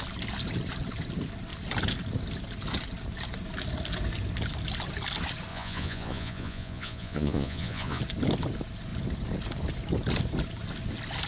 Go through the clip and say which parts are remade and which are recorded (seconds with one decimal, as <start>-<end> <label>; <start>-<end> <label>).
0.0-5.5 recorded; 5.5-8.0 remade; 8.0-11.3 recorded